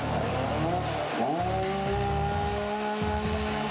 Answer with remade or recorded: recorded